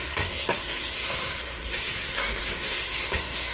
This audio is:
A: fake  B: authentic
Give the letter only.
A